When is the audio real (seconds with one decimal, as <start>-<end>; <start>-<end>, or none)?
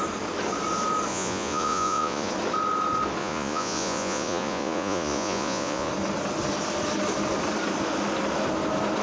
0.0-1.1; 2.3-3.2; 5.9-9.0